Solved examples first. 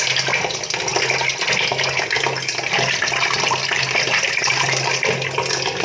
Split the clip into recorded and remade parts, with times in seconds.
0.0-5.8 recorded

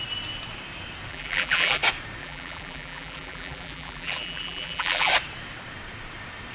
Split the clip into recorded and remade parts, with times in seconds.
0.0-1.1 recorded; 1.1-1.8 remade; 1.8-2.2 recorded; 2.2-5.1 remade; 5.1-6.5 recorded